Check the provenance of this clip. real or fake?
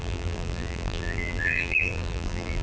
fake